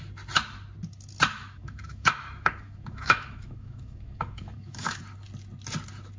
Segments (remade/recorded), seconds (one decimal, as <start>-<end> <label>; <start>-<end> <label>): 0.0-1.3 recorded; 1.3-5.0 remade; 5.0-6.2 recorded